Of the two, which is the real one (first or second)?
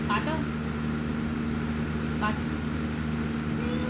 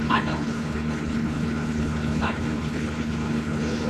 first